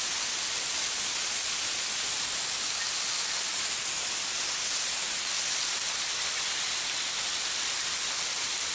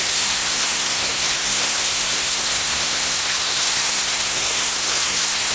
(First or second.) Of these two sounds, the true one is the first